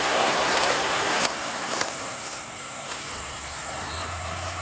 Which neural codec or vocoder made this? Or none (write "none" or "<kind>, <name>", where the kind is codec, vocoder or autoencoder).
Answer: codec, SNAC